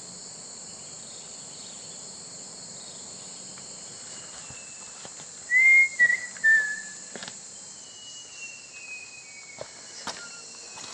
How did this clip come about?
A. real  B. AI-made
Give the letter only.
A